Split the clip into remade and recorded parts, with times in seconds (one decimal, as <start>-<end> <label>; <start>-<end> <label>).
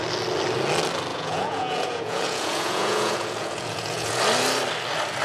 0.0-1.1 recorded; 1.1-4.2 remade; 4.2-5.2 recorded